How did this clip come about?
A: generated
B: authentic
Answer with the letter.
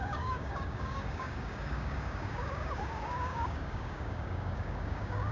A